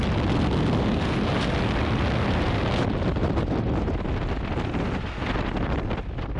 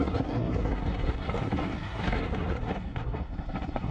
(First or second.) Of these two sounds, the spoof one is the second